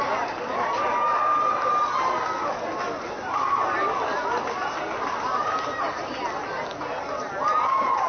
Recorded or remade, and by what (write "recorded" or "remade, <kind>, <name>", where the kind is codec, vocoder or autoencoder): recorded